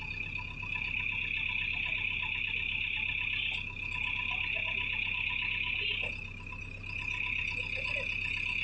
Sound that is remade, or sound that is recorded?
recorded